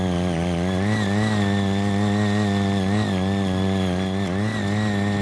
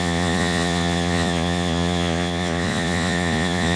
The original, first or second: first